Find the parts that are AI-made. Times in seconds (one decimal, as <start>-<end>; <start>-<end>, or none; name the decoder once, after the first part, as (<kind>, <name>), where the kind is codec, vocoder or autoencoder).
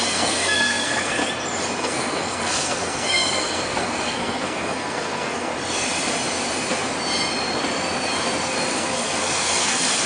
0.0-1.2 (codec, SNAC); 1.8-5.5; 8.7-10.1